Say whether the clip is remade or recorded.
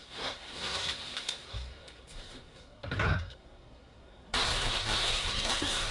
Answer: remade